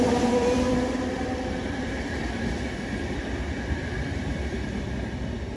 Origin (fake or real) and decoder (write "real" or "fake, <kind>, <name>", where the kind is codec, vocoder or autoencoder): fake, vocoder, BigVGAN v2